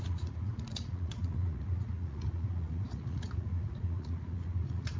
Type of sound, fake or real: fake